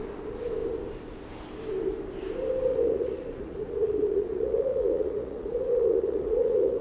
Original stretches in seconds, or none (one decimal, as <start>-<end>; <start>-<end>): 0.0-2.7